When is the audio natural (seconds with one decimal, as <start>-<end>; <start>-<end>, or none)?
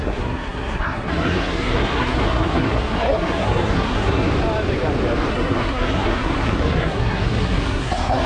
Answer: 4.3-5.3